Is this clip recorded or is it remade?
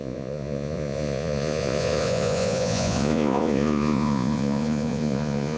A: remade